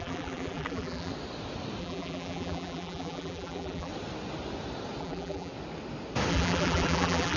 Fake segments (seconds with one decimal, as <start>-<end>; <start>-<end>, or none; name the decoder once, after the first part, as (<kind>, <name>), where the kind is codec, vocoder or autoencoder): 0.0-1.1 (vocoder, BigVGAN v2); 1.8-3.9; 5.0-5.5; 6.3-7.4